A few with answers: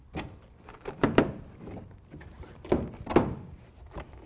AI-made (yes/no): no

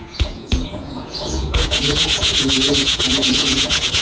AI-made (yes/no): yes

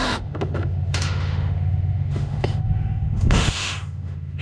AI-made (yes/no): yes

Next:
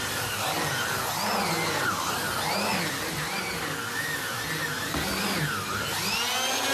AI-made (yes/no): no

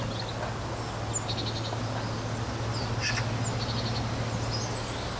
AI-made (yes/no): no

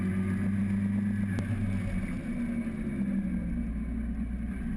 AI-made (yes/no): no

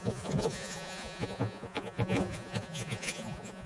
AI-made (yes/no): yes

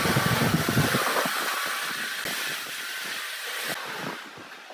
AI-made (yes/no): no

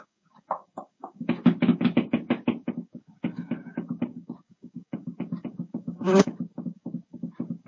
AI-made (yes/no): yes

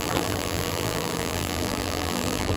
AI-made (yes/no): yes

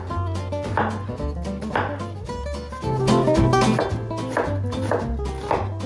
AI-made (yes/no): no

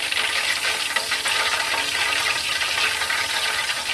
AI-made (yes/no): no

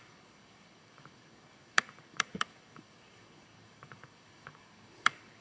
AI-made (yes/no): yes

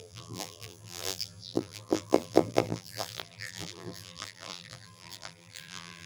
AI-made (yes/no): yes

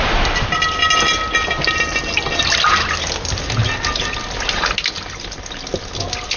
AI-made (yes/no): no